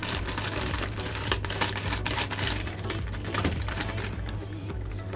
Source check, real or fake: fake